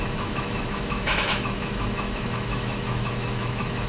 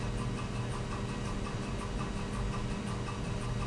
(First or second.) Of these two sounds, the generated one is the first